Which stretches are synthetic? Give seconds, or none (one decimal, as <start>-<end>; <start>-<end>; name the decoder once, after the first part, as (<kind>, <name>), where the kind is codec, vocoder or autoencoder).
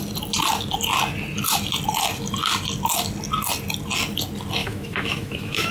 4.6-5.7 (autoencoder, DAC-VAE)